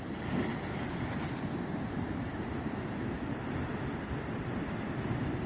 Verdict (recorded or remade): recorded